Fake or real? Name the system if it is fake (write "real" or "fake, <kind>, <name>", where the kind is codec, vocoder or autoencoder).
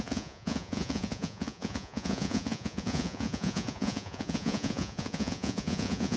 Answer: fake, vocoder, Vocos